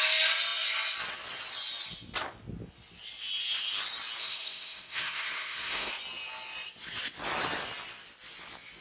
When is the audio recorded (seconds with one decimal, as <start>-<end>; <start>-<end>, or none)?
0.0-4.2; 5.9-8.8